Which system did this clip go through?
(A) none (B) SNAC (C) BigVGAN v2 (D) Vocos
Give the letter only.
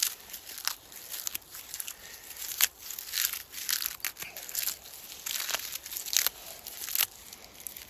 A